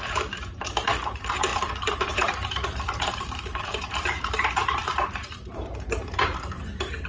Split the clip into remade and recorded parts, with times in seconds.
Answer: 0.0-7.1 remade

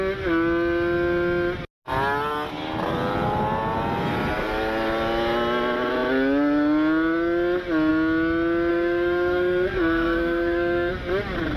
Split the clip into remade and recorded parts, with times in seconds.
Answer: 0.0-8.7 recorded; 8.7-10.9 remade; 10.9-11.6 recorded

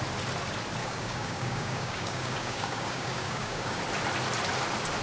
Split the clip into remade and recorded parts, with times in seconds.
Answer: 0.0-0.8 recorded; 0.8-3.8 remade; 3.8-5.0 recorded

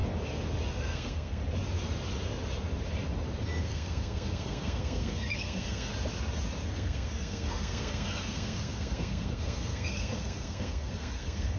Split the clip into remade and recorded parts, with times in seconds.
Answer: 0.0-0.7 recorded; 0.7-1.4 remade; 1.4-3.6 recorded; 3.6-5.9 remade; 5.9-6.7 recorded; 6.7-11.6 remade